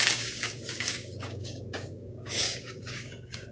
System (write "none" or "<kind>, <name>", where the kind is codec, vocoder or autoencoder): codec, DAC